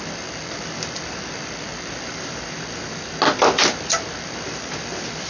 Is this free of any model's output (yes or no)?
yes